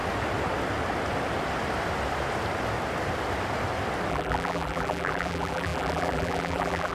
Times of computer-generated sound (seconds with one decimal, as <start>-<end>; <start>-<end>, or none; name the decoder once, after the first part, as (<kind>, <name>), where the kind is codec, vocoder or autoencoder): 4.1-6.9 (vocoder, BigVGAN v2)